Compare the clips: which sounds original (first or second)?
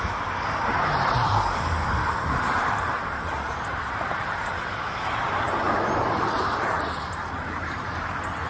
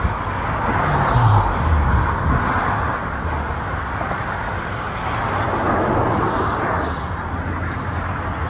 second